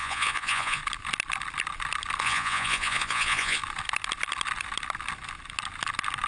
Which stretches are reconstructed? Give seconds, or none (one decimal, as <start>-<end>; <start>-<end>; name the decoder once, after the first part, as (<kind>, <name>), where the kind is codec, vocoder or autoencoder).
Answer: 0.0-0.8 (vocoder, Vocos); 2.2-3.6